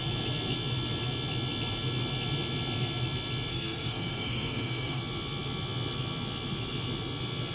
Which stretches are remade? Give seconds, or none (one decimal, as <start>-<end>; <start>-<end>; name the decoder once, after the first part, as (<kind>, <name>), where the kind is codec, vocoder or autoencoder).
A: 3.5-5.0 (codec, SNAC)